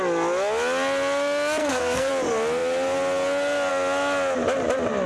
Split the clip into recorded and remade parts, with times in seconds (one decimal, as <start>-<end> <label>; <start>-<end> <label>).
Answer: 0.0-1.6 recorded; 1.6-2.1 remade; 2.1-5.1 recorded